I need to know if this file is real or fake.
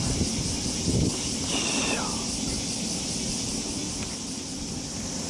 real